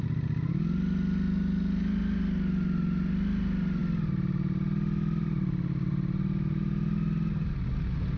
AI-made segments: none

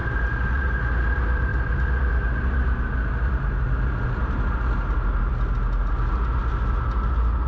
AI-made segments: none

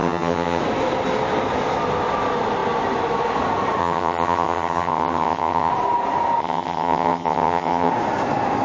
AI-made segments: 0.0-0.6 (vocoder, HiFi-GAN); 3.8-5.7; 6.4-7.9

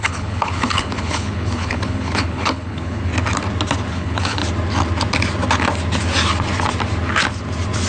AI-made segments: 0.0-3.1 (codec, HILCodec); 3.9-4.4

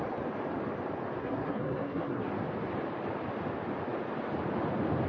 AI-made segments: 1.2-2.3 (codec, SNAC)

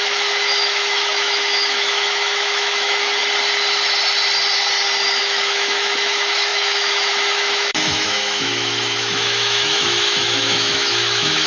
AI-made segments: 0.0-3.2 (autoencoder, DAC-VAE); 5.2-11.5